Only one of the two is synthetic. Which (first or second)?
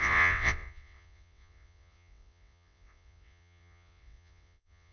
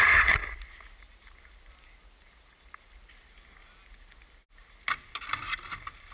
first